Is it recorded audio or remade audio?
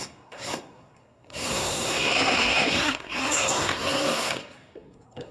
remade